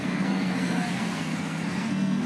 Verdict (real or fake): fake